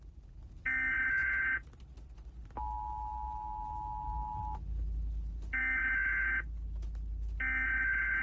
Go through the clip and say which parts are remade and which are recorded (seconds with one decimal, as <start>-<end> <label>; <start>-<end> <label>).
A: 0.0-8.2 recorded